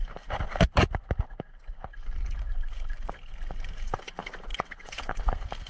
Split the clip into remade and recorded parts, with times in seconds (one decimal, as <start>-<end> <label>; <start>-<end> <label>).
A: 0.0-4.5 recorded; 4.5-5.2 remade; 5.2-5.7 recorded